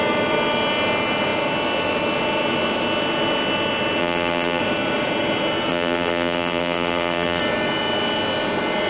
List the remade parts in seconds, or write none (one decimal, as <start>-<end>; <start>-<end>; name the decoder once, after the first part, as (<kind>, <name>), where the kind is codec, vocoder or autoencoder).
4.0-4.6 (vocoder, BigVGAN v2); 5.7-7.4